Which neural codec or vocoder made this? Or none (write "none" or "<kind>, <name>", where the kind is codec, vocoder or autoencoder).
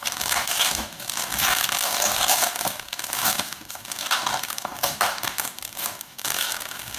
codec, DAC